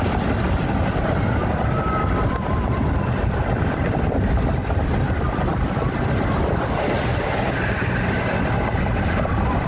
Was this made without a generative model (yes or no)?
no